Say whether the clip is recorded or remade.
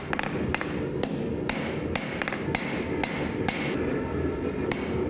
recorded